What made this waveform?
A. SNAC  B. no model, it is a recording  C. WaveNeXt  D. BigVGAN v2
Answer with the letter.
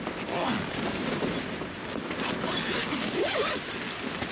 B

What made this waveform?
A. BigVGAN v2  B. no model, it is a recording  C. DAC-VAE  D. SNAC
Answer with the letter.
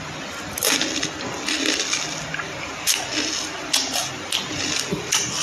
B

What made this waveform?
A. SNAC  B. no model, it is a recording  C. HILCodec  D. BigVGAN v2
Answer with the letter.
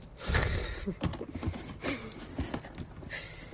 B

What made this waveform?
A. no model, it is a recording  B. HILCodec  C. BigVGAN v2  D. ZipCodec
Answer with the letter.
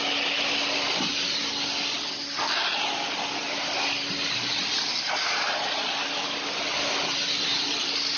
A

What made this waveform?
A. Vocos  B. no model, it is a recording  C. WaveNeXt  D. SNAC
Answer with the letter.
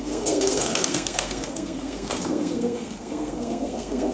D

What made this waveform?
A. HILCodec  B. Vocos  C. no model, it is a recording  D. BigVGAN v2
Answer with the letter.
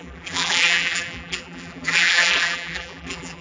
D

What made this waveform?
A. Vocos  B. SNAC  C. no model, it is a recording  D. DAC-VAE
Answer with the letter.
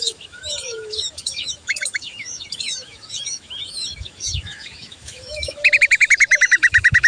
D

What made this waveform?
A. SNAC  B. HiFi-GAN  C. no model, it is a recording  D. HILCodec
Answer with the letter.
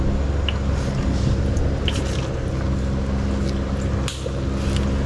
C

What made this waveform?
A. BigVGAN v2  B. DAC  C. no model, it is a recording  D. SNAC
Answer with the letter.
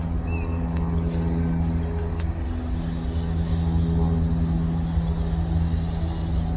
C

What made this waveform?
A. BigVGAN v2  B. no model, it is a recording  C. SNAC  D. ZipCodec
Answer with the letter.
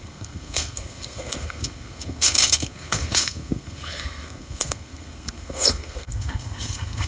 C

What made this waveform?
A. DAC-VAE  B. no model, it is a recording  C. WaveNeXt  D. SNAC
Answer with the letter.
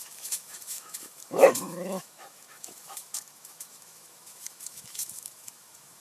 A